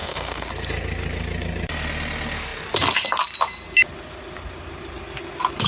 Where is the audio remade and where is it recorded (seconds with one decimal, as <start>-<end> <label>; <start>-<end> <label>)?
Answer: 0.0-0.5 remade; 0.5-5.7 recorded